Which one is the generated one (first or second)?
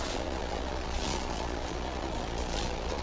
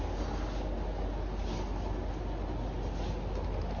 first